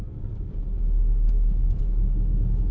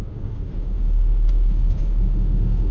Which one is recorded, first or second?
first